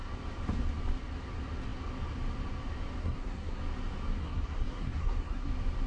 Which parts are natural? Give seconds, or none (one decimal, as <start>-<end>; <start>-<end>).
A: 0.0-3.0; 3.6-4.2; 5.5-5.9